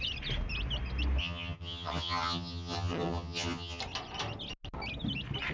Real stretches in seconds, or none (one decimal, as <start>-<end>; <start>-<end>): 0.0-1.2; 3.8-5.5